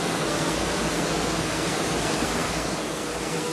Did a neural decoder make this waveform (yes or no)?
yes